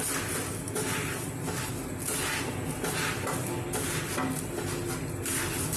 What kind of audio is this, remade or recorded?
recorded